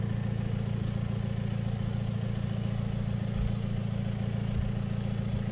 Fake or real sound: real